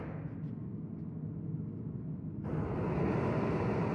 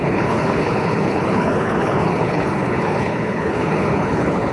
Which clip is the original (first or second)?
first